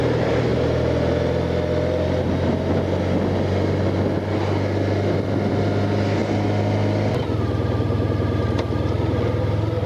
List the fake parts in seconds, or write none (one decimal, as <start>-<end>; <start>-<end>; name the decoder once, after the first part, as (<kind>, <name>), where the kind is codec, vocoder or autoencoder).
none